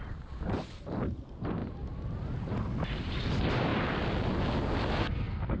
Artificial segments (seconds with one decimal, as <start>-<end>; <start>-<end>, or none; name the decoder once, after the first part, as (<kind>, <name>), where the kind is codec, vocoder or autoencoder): 5.0-5.6 (codec, SNAC)